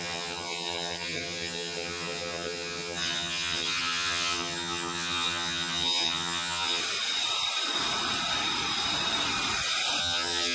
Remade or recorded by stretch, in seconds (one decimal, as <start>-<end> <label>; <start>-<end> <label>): 0.0-6.8 remade; 6.8-10.0 recorded; 10.0-10.5 remade